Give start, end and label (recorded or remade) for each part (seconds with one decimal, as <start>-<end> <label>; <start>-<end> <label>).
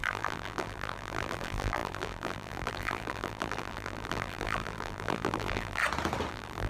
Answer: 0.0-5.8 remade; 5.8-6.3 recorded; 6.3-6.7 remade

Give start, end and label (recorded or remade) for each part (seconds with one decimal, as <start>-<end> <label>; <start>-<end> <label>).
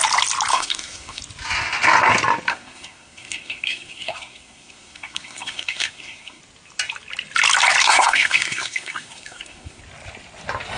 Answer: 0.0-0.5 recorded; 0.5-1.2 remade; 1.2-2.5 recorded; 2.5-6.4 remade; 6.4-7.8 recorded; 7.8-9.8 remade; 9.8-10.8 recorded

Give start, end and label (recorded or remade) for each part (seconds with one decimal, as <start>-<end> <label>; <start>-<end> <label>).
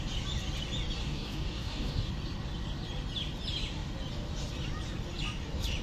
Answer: 0.0-1.0 recorded; 1.0-2.1 remade; 2.1-5.8 recorded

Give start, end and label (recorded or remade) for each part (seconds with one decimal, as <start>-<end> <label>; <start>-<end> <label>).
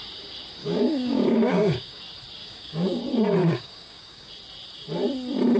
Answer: 0.0-0.6 recorded; 0.6-2.0 remade; 2.0-2.4 recorded; 2.4-3.0 remade; 3.0-3.4 recorded; 3.4-4.3 remade; 4.3-5.6 recorded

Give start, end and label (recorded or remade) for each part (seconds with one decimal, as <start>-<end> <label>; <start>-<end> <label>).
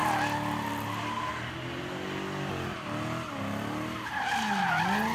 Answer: 0.0-5.1 recorded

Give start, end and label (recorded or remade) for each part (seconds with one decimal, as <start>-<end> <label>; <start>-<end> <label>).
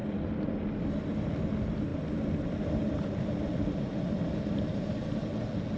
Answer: 0.0-1.9 recorded; 1.9-5.0 remade; 5.0-5.8 recorded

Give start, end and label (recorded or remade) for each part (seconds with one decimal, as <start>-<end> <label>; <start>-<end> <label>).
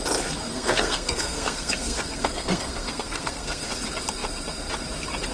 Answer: 0.0-0.5 recorded; 0.5-3.7 remade; 3.7-5.3 recorded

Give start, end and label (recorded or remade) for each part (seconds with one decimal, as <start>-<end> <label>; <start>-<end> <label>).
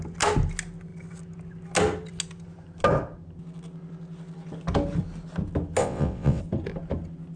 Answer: 0.0-5.8 recorded; 5.8-6.4 remade; 6.4-7.4 recorded